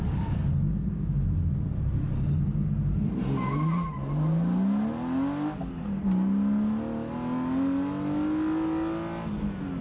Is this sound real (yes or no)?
yes